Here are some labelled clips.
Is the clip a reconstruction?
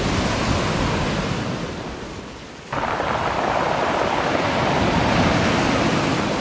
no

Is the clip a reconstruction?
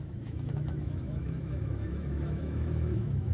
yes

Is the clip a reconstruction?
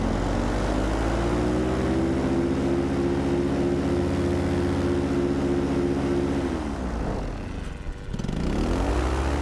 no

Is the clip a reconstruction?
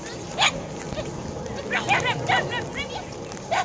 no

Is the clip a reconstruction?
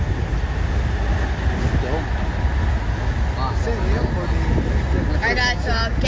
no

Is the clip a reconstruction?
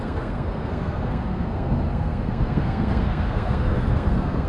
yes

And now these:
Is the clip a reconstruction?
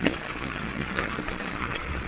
yes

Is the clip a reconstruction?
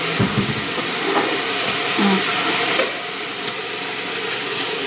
yes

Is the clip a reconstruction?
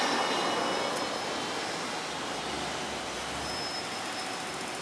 no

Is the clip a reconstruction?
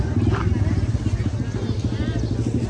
no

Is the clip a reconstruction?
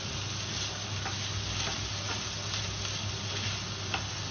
no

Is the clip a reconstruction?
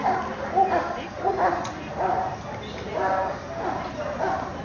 no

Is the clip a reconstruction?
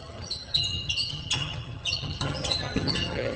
yes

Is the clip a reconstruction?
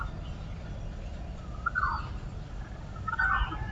no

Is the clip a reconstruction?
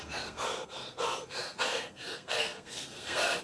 yes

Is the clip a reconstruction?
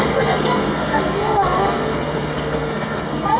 yes